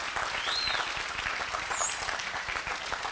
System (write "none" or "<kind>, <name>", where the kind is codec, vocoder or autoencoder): none